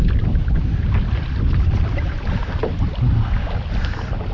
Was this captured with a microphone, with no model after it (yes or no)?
yes